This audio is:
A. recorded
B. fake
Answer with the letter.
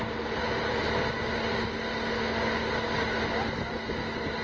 A